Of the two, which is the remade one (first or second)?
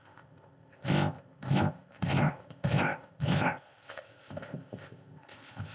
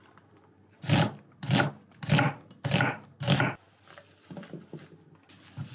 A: first